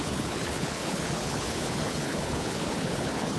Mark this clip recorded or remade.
remade